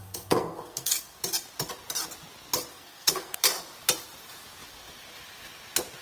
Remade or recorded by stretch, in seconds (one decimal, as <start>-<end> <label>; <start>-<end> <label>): 0.0-1.2 remade; 1.2-2.7 recorded; 2.7-3.4 remade; 3.4-6.0 recorded